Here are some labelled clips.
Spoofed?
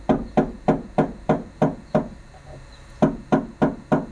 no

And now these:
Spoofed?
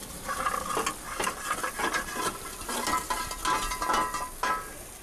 no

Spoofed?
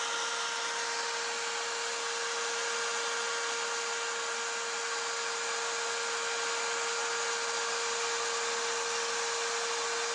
no